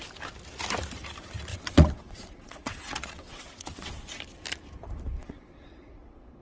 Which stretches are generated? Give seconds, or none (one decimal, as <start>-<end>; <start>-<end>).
1.5-4.2; 5.2-6.4